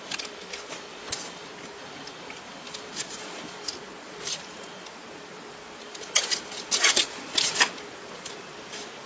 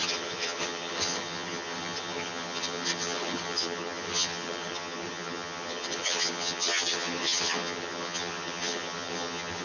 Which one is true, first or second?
first